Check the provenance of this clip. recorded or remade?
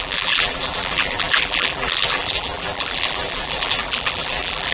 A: remade